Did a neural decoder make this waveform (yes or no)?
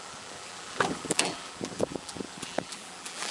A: yes